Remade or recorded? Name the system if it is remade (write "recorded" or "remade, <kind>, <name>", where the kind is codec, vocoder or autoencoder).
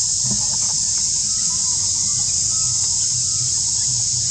recorded